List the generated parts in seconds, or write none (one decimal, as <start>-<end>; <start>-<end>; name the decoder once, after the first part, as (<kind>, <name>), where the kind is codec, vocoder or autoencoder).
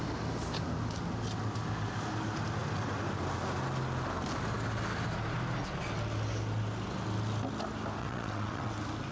8.0-8.7 (vocoder, WaveNeXt)